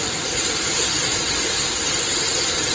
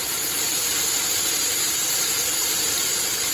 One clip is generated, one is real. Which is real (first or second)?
first